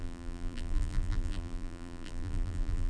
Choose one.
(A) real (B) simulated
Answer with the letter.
B